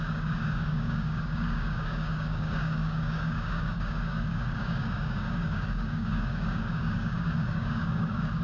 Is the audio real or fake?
fake